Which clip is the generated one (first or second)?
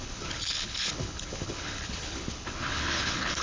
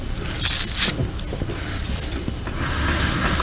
first